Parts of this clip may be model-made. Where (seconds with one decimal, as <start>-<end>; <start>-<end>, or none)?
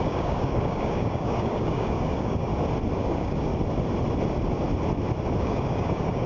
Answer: 0.0-2.5; 3.0-3.5; 5.4-6.3